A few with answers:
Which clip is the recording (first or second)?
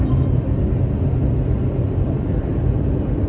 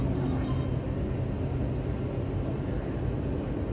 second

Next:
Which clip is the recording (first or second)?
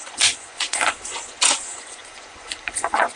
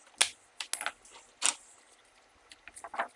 second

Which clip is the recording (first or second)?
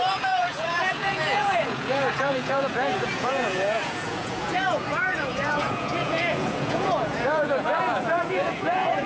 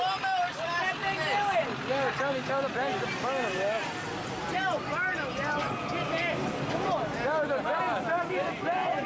second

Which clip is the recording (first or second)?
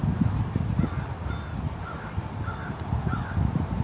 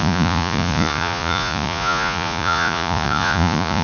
first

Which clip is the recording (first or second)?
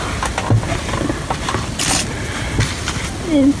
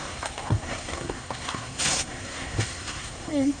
first